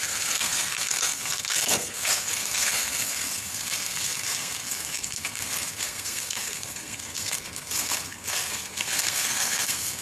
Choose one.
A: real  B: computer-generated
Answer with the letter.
B